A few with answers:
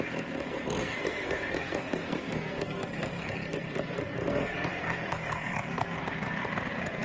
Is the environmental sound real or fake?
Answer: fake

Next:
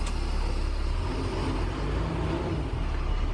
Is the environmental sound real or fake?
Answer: real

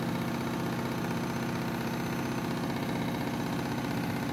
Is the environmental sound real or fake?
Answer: real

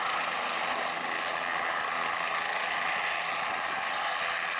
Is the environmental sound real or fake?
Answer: real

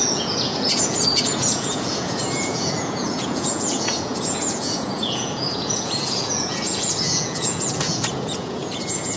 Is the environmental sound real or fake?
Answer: fake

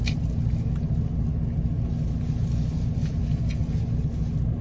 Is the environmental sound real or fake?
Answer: real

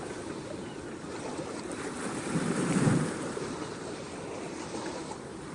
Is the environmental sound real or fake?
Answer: fake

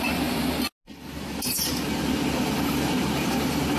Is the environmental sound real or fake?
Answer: real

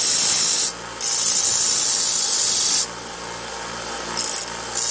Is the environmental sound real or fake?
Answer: real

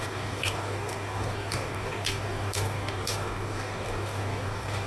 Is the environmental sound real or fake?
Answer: fake